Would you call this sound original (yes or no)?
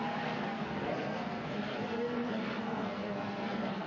no